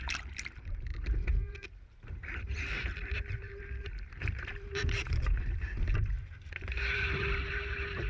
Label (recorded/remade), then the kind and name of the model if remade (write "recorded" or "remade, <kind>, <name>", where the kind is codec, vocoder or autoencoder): remade, vocoder, BigVGAN v2